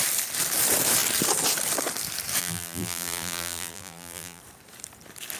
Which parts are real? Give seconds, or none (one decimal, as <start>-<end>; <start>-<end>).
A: 0.0-2.4; 4.4-5.4